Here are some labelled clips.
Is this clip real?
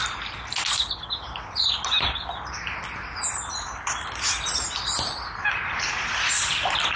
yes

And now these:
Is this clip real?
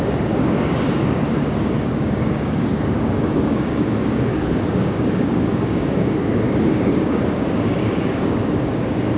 no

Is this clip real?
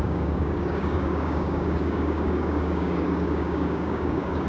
no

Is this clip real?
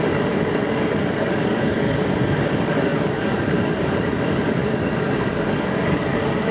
no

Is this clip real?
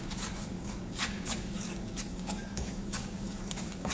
no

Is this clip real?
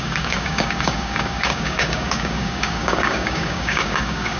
no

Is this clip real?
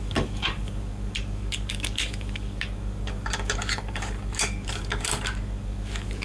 no